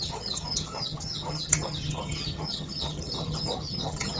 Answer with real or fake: fake